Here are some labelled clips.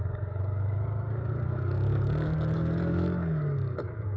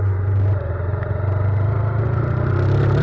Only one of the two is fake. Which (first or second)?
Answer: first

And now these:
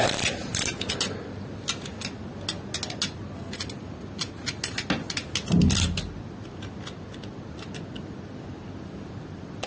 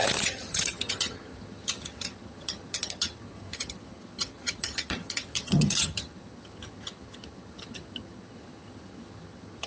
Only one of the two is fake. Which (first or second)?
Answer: second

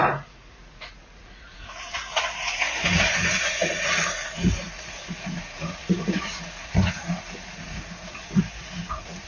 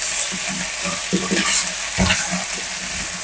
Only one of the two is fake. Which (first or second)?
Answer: first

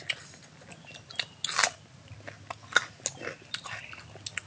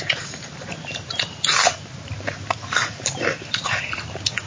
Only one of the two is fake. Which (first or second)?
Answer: second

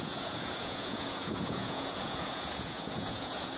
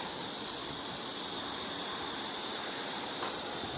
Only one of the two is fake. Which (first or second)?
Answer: first